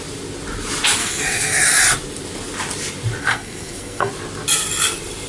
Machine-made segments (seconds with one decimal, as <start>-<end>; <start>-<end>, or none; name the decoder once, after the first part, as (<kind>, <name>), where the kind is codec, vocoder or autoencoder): 1.0-1.7 (codec, SNAC); 3.2-4.1